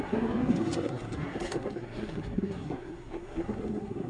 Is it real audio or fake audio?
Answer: fake